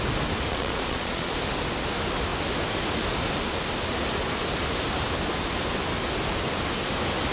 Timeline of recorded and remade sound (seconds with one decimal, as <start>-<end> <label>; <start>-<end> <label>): 0.0-0.5 recorded; 0.5-1.3 remade; 1.3-7.3 recorded